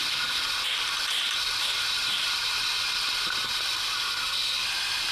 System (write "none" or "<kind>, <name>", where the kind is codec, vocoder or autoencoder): none